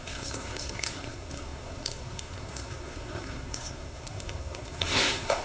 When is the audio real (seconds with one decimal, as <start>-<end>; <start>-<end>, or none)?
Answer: none